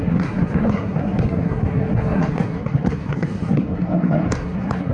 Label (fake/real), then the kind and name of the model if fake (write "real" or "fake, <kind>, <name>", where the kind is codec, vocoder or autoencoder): fake, codec, SNAC